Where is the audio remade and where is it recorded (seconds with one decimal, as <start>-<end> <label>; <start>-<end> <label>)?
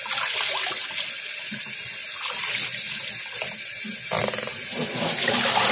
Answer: 0.0-5.7 recorded